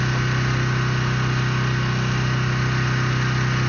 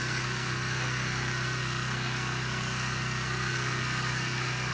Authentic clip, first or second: first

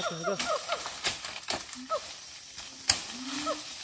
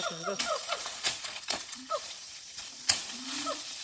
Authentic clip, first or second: first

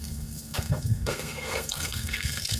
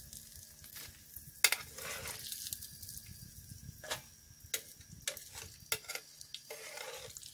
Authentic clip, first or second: second